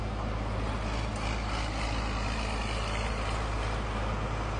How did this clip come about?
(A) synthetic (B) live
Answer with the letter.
B